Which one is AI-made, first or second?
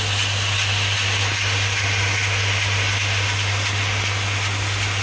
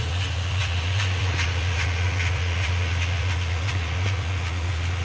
second